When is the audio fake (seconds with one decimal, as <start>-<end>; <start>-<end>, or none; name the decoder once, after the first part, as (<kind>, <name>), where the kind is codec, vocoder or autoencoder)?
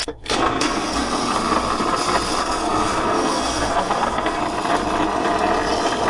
0.0-1.0 (codec, SNAC); 2.4-4.4